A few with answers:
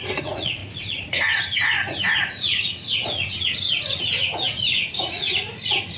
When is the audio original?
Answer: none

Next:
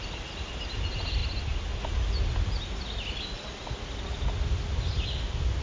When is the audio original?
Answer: 0.0-5.6

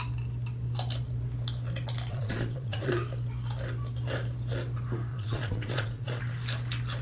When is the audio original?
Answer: 0.0-2.1; 2.9-5.1; 6.2-7.0